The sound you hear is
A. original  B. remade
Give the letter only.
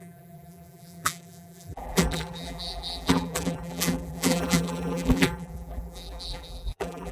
B